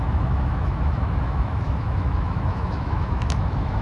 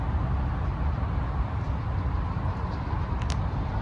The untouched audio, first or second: second